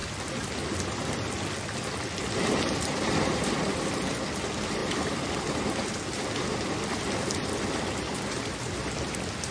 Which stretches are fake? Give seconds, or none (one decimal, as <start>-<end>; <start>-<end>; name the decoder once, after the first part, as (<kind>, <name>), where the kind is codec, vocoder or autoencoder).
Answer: 4.8-7.6 (vocoder, BigVGAN v2)